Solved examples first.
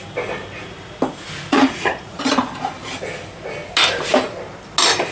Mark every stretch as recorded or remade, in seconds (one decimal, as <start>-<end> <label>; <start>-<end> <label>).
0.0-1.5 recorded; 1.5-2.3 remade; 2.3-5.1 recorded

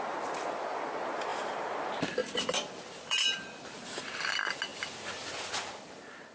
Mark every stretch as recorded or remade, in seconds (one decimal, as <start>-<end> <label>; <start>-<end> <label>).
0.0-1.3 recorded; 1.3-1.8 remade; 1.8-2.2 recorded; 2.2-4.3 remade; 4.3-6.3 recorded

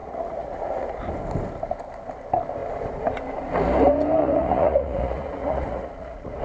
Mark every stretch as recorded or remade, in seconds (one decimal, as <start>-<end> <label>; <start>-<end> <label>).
0.0-1.0 remade; 1.0-4.2 recorded; 4.2-6.4 remade